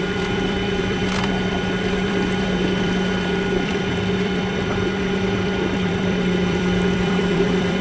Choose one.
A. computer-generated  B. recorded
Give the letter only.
A